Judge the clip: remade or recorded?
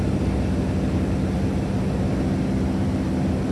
recorded